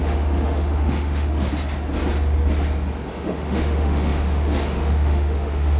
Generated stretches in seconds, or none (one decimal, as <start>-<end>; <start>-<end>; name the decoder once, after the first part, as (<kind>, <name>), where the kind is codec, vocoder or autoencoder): 0.0-1.5 (autoencoder, DAC-VAE); 3.1-5.8

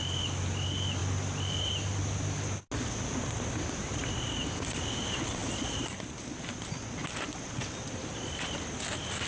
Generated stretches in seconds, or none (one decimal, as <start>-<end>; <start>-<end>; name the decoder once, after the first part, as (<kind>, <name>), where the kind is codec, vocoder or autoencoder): none

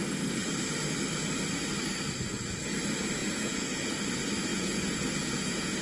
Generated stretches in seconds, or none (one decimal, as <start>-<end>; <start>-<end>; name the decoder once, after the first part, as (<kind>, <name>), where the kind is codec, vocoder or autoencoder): 3.2-4.0 (vocoder, Vocos); 4.5-5.8

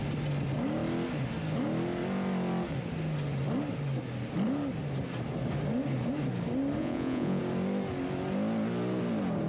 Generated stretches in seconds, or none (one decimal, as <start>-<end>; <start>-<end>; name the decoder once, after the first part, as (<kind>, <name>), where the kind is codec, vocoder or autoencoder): 6.8-7.4 (vocoder, Vocos)

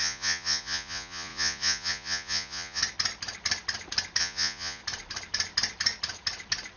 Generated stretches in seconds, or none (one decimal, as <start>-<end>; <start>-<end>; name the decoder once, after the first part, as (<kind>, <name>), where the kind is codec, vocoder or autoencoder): 0.0-2.8 (vocoder, Vocos); 4.2-4.8